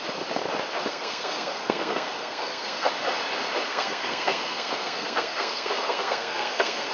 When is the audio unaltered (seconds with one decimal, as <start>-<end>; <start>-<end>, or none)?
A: 0.0-0.9; 2.9-3.7